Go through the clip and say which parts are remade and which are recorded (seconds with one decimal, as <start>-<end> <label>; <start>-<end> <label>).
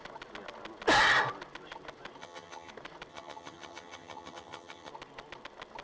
0.0-2.2 recorded; 2.2-2.7 remade; 2.7-3.1 recorded; 3.1-4.9 remade; 4.9-5.8 recorded